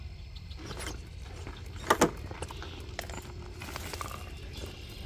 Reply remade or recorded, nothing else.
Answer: recorded